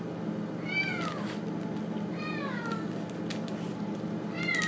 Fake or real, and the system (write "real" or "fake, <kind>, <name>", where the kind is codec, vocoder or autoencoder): real